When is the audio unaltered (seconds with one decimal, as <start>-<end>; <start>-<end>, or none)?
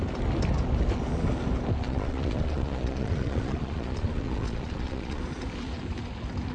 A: 0.0-1.8; 5.2-6.5